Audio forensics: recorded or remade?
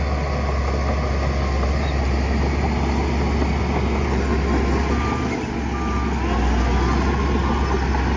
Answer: recorded